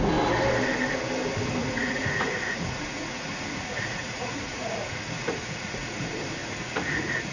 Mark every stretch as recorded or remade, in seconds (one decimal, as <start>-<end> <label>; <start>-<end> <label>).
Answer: 0.0-1.6 recorded; 1.6-6.0 remade; 6.0-6.4 recorded; 6.4-7.3 remade